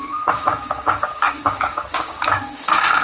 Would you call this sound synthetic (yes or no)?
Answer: yes